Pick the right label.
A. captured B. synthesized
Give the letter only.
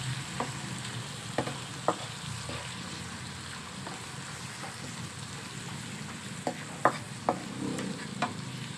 A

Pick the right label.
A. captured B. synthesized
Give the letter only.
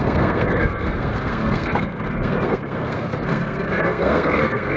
B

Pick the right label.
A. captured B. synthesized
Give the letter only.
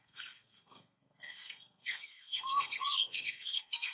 B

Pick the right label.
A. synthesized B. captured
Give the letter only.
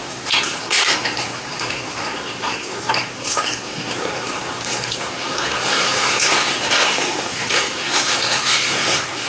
A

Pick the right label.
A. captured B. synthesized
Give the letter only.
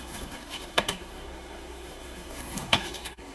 B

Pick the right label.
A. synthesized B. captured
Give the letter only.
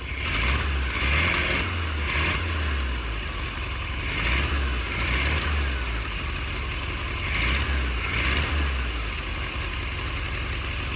B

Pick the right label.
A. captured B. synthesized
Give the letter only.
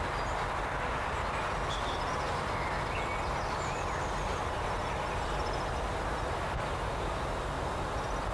A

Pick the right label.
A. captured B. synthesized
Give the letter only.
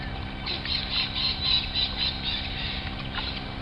A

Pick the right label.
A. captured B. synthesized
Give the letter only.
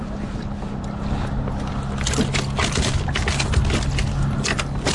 A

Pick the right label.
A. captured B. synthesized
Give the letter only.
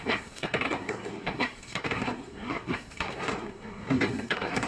B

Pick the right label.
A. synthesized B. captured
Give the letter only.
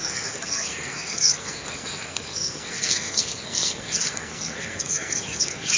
A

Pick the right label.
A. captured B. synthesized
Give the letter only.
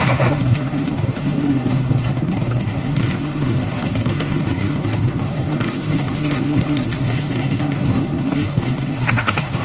B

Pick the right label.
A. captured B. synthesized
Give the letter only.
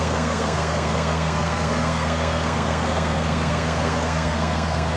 B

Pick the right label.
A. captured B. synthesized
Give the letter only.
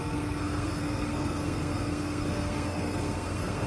B